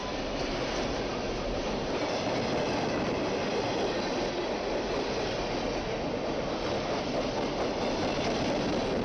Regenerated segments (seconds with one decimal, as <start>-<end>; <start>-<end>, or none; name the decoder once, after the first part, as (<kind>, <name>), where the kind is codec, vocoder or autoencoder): none